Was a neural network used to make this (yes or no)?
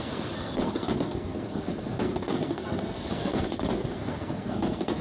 yes